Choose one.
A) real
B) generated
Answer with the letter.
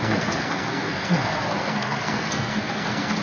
B